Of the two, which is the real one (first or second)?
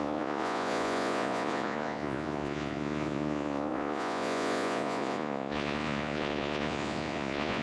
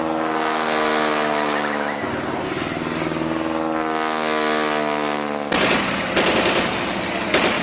second